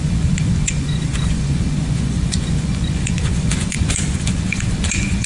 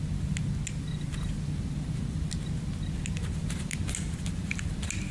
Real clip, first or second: second